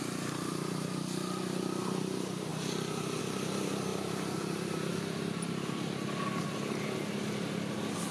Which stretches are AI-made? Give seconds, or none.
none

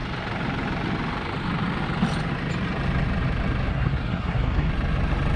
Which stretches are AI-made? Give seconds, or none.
3.7-4.7 (codec, SNAC)

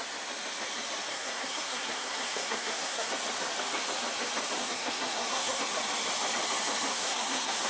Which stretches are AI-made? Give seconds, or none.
1.1-3.1 (codec, SNAC); 4.6-5.6; 6.9-7.7